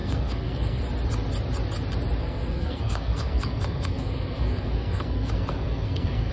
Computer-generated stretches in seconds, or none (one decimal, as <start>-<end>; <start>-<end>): 0.0-0.8; 2.2-6.3